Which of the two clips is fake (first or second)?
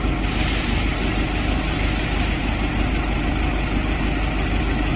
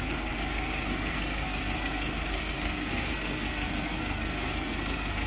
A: second